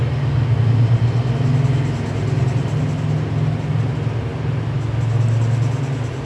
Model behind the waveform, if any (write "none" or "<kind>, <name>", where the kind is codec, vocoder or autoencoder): none